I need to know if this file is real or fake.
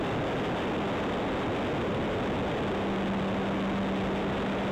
real